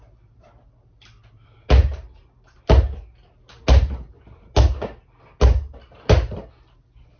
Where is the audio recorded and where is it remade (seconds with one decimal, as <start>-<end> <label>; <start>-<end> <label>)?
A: 0.0-7.2 recorded